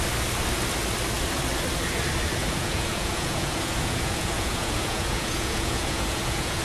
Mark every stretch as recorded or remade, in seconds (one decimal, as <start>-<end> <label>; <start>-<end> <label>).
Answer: 0.0-2.3 recorded; 2.3-6.6 remade